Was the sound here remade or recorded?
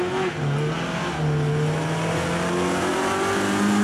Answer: recorded